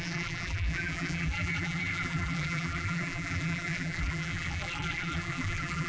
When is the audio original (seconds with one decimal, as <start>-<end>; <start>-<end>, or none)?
none